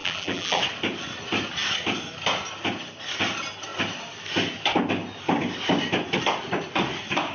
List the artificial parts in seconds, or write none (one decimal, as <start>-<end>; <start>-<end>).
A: 0.0-0.6